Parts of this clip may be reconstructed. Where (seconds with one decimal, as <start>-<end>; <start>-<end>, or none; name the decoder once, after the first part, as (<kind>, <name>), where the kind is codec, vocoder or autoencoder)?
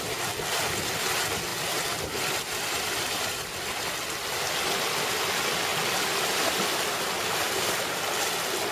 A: 5.7-8.0 (vocoder, BigVGAN v2)